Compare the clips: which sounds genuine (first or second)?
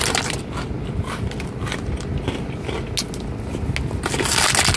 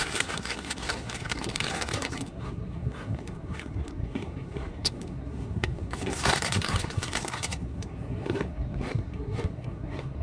first